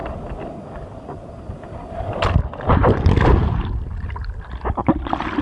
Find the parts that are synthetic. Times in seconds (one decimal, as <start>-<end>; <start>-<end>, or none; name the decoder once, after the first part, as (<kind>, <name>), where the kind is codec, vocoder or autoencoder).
1.5-2.8 (vocoder, BigVGAN v2); 3.5-5.4